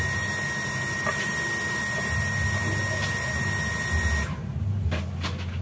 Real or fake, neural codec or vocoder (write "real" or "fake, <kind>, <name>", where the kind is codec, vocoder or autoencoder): real